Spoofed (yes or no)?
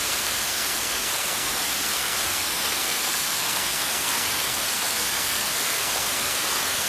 yes